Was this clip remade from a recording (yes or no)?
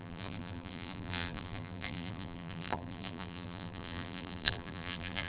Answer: yes